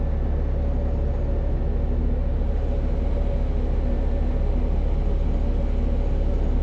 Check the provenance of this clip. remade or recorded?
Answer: recorded